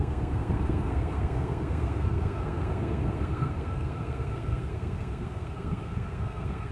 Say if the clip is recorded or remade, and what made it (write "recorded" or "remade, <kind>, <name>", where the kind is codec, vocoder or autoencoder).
remade, codec, SNAC